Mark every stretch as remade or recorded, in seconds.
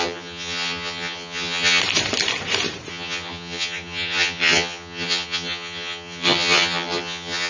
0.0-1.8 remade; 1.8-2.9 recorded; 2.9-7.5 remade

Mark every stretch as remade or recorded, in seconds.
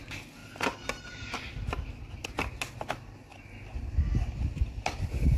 0.0-5.4 recorded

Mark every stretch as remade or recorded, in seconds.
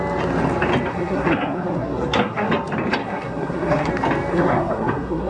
0.0-0.9 recorded; 0.9-2.5 remade; 2.5-3.0 recorded; 3.0-3.9 remade; 3.9-4.3 recorded; 4.3-5.3 remade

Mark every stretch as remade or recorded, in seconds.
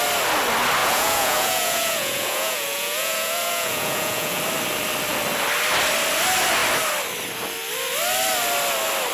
0.0-0.8 recorded; 0.8-4.4 remade; 4.4-9.1 recorded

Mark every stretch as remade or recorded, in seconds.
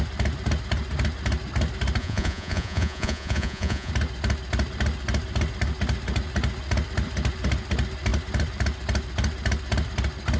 0.0-2.0 recorded; 2.0-3.9 remade; 3.9-10.4 recorded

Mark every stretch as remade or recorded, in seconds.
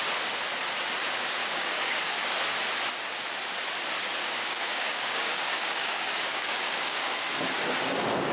0.0-1.4 recorded; 1.4-2.3 remade; 2.3-4.2 recorded; 4.2-7.2 remade; 7.2-8.3 recorded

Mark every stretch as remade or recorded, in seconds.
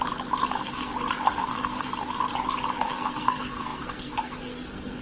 0.0-0.5 recorded; 0.5-0.9 remade; 0.9-1.4 recorded; 1.4-1.9 remade; 1.9-2.8 recorded; 2.8-5.0 remade